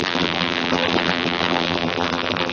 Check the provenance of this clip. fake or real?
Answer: fake